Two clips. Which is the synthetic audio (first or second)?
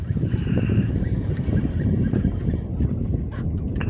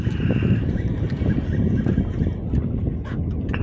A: first